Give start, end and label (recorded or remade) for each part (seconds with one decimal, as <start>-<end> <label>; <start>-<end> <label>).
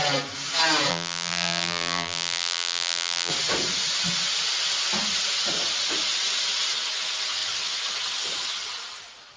0.0-0.9 recorded; 0.9-3.3 remade; 3.3-9.4 recorded